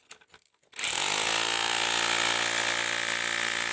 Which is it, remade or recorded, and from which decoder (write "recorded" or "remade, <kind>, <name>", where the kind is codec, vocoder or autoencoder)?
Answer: recorded